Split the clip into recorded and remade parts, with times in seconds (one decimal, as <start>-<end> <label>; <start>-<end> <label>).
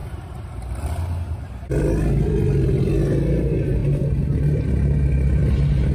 0.0-5.4 recorded; 5.4-5.9 remade